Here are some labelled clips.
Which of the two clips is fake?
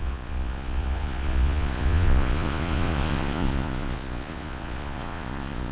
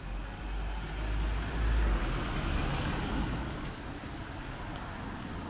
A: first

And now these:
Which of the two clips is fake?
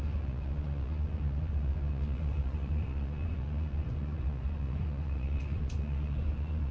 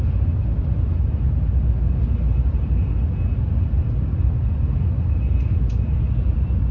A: first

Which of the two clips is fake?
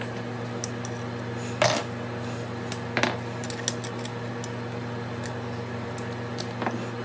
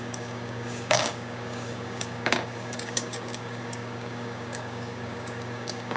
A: second